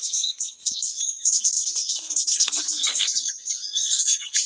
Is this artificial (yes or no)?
yes